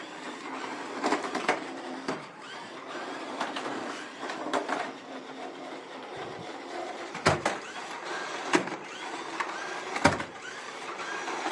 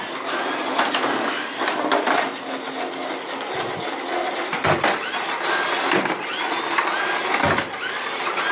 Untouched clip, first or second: second